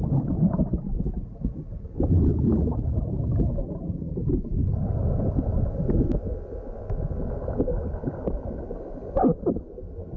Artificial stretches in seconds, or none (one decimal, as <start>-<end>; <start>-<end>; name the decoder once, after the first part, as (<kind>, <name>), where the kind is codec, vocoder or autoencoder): none